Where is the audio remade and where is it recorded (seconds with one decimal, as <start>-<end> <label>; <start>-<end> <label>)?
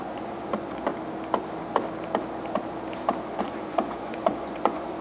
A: 0.0-0.9 remade; 0.9-3.4 recorded; 3.4-5.0 remade